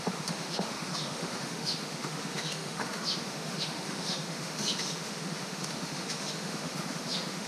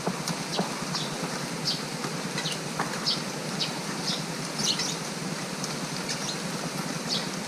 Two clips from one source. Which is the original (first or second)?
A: second